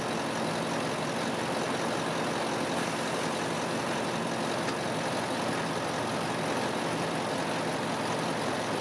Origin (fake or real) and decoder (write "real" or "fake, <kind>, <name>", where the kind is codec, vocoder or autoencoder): real